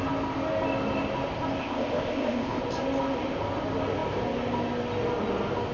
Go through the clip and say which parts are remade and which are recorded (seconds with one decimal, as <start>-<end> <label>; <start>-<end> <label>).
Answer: 0.0-1.6 recorded; 1.6-2.6 remade; 2.6-5.7 recorded